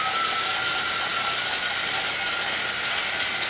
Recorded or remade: recorded